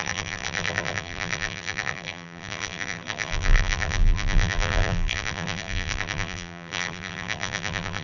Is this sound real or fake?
fake